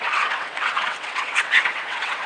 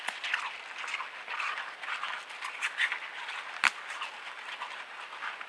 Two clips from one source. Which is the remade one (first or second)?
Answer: first